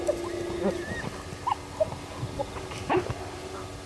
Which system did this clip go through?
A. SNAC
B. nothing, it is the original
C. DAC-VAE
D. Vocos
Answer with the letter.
B